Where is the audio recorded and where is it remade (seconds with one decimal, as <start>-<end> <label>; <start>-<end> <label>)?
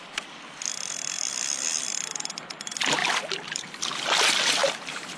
0.0-3.0 recorded; 3.0-3.8 remade; 3.8-4.6 recorded; 4.6-5.2 remade